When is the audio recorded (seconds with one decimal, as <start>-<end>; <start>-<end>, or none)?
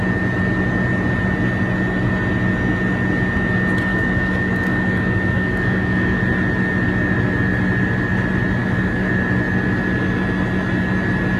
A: 0.0-3.9; 6.2-8.6; 9.1-11.4